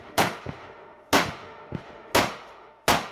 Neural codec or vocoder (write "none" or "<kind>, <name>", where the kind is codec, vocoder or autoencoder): autoencoder, DAC-VAE